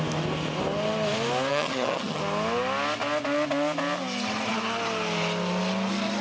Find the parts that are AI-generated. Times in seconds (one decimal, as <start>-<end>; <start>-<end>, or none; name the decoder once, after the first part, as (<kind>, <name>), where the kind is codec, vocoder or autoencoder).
1.5-2.2 (vocoder, HiFi-GAN)